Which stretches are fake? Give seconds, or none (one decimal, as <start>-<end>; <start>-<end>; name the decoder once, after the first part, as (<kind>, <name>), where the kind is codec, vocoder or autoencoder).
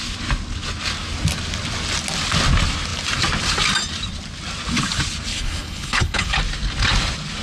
5.3-6.4 (codec, HILCodec)